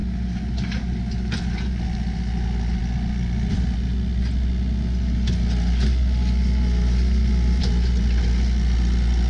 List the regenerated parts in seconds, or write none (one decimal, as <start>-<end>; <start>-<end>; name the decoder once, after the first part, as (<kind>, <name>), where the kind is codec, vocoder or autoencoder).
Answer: none

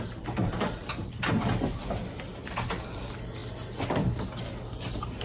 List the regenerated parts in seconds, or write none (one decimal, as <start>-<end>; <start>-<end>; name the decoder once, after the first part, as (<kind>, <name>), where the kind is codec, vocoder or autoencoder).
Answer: none

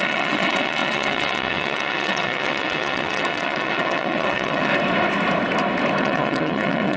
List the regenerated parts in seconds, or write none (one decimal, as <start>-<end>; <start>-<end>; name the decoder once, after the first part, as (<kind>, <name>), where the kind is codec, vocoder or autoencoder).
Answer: 0.0-4.7 (vocoder, WaveNeXt); 6.0-7.0

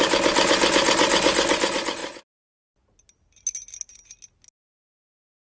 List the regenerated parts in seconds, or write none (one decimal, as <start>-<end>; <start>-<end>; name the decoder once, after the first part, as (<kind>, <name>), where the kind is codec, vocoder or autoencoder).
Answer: none

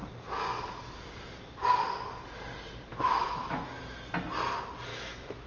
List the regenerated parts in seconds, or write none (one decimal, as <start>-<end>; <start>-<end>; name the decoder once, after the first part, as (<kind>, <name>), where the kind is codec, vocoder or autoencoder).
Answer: 2.9-3.7 (autoencoder, DAC-VAE); 4.9-5.5